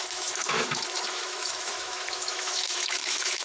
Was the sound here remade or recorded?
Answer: remade